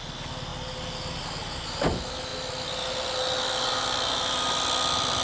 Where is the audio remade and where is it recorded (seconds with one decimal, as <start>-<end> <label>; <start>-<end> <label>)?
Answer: 0.0-5.2 recorded